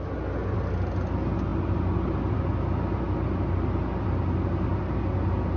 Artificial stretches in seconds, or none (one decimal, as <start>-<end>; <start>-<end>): none